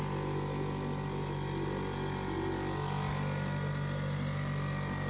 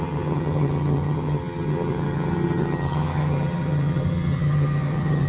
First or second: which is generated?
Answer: second